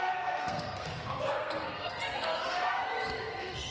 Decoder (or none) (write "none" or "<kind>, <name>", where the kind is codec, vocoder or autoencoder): codec, SNAC